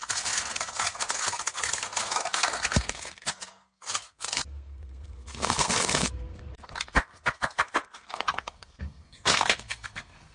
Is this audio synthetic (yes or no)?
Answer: yes